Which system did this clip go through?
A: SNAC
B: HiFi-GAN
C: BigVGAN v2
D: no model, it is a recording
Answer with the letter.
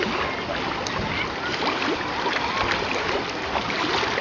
D